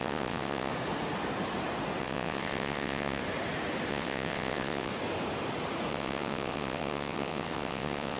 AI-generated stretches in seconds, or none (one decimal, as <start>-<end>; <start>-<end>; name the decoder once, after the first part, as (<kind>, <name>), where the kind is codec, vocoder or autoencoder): 0.0-0.7 (vocoder, WaveNeXt); 2.0-3.2; 3.9-4.9; 5.9-8.2